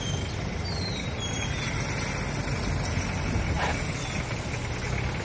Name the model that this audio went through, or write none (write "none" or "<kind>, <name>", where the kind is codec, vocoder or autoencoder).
none